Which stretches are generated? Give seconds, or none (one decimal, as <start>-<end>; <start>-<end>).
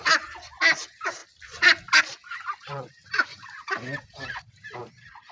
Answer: 2.7-4.8